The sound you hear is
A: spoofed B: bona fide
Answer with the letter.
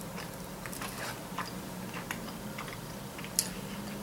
B